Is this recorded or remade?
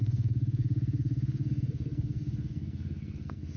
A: remade